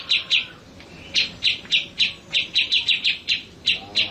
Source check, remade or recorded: recorded